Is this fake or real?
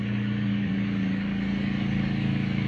fake